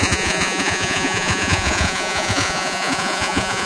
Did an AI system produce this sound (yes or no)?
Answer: yes